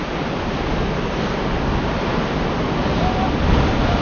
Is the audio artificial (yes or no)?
no